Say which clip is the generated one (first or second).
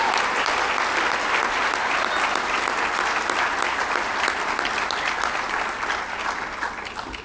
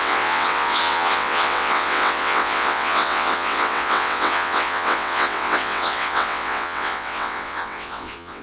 second